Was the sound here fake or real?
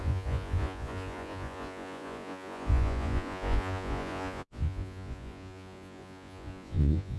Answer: fake